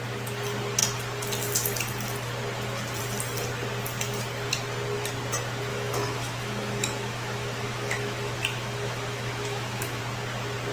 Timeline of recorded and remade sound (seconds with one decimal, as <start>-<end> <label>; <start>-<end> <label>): 0.0-5.7 recorded; 5.7-10.0 remade; 10.0-10.7 recorded